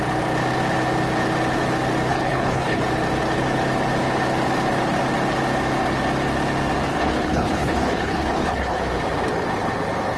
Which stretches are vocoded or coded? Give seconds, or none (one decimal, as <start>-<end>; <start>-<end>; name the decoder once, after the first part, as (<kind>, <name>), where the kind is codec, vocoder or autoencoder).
2.1-2.8 (codec, HILCodec); 6.9-8.8